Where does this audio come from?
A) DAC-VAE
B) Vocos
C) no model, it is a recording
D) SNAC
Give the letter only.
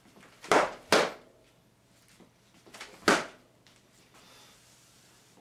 C